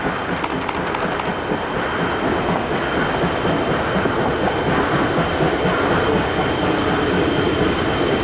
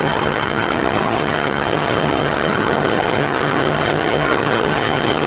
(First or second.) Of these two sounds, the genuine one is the first